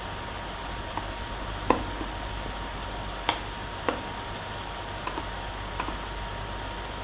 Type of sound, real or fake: real